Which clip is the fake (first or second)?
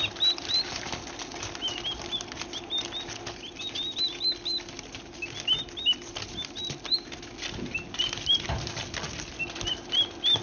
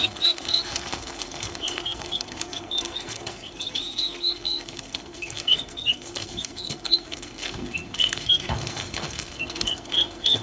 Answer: second